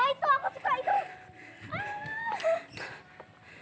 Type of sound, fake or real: real